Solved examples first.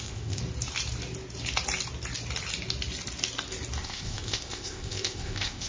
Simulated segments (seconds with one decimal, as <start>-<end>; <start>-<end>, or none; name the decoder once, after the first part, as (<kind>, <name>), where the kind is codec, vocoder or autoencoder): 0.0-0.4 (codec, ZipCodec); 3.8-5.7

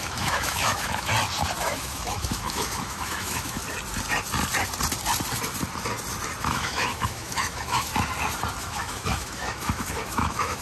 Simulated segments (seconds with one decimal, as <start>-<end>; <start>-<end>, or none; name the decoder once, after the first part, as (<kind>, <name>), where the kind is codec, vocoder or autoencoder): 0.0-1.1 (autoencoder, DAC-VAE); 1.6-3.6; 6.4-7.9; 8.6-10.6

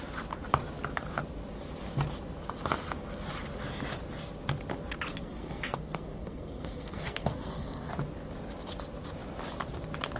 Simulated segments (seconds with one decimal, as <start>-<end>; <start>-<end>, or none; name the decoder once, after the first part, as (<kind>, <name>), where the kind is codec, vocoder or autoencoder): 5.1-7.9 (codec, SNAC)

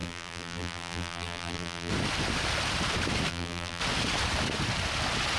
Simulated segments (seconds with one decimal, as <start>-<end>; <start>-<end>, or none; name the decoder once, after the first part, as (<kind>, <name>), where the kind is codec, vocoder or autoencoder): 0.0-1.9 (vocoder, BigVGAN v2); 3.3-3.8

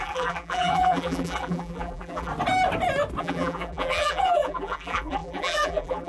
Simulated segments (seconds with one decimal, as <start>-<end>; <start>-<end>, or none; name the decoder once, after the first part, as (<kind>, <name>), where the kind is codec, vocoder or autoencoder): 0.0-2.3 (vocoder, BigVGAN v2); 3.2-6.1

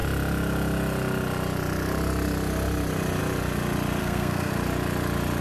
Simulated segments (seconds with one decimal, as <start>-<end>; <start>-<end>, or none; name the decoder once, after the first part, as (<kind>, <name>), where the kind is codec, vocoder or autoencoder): 4.0-4.5 (codec, SNAC)

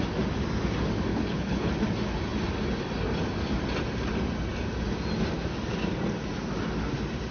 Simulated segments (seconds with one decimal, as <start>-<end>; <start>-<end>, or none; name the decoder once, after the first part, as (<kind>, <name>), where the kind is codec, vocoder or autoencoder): 1.1-1.7 (codec, HILCodec)

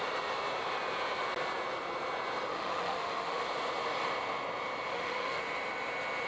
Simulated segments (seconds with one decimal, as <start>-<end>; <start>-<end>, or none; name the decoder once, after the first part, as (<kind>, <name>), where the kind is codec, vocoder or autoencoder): 2.5-3.4 (autoencoder, DAC-VAE); 4.9-5.4